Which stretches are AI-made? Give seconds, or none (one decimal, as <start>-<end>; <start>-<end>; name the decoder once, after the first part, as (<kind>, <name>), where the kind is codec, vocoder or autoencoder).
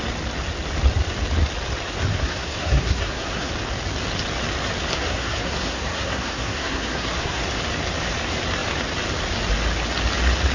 2.1-3.5 (codec, SNAC); 4.9-7.4